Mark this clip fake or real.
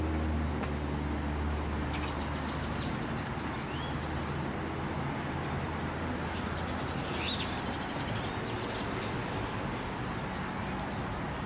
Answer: real